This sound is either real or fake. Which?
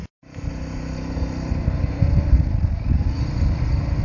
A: real